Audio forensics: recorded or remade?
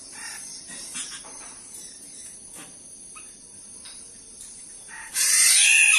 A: remade